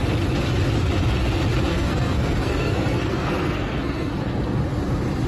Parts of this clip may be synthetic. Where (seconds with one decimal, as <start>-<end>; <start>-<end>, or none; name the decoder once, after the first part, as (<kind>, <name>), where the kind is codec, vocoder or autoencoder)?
1.7-4.2 (codec, SNAC)